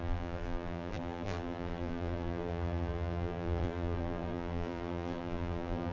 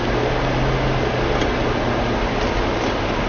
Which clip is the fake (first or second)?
first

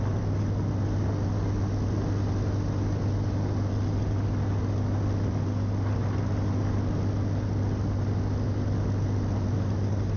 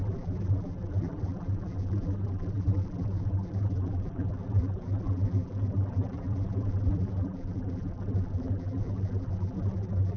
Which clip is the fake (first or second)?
second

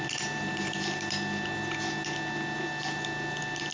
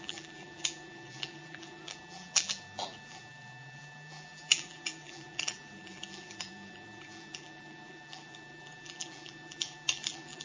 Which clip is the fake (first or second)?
second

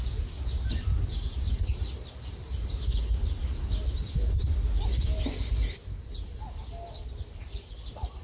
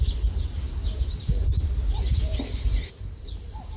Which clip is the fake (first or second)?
second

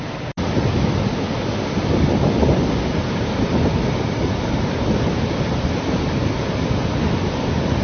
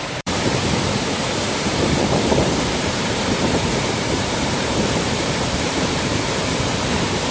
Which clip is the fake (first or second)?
second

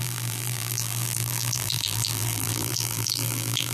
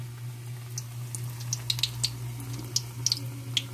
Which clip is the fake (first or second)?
first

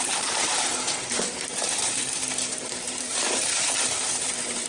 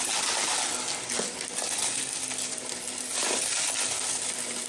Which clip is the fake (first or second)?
first